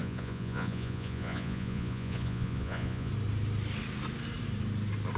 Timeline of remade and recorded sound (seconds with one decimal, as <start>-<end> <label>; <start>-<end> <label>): 0.0-3.1 remade; 3.1-5.2 recorded